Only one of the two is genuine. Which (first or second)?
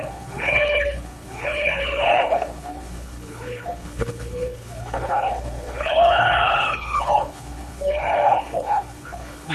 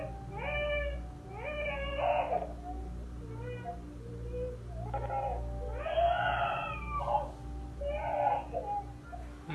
second